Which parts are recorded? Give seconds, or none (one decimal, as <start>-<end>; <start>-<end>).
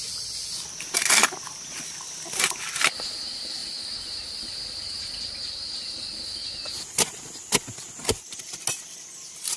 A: 0.0-9.6